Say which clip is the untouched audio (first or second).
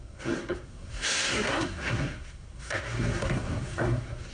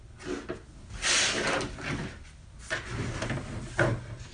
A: second